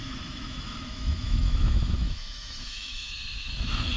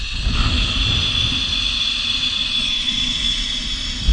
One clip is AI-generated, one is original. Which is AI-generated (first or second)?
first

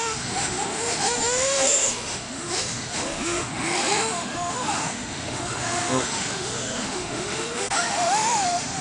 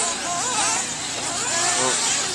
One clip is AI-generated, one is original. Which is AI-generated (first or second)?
first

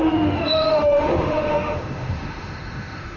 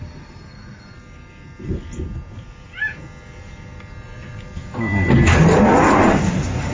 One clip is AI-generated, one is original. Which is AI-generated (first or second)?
first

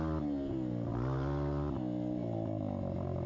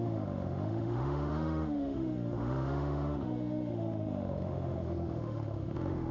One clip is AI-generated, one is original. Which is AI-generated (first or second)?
second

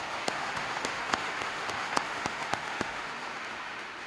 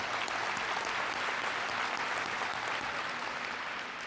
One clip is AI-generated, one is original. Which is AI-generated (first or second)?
first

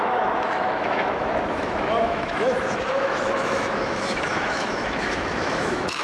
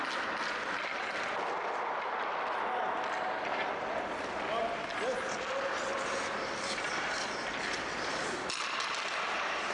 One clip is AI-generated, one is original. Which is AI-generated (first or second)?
first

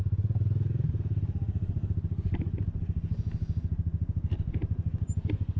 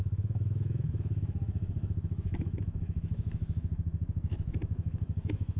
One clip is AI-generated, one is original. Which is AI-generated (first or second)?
second